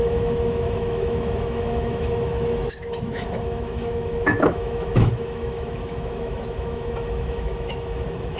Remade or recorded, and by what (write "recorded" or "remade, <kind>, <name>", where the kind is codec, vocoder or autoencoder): remade, autoencoder, DAC-VAE